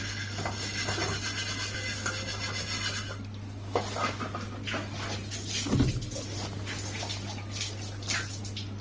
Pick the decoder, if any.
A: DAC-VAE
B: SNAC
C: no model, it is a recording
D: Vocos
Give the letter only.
C